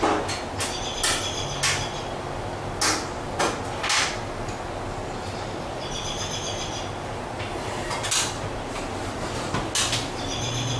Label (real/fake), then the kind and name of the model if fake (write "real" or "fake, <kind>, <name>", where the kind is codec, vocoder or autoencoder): real